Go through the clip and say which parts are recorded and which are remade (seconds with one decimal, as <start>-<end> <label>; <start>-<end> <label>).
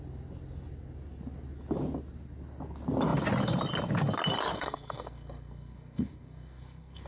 0.0-4.5 recorded; 4.5-7.1 remade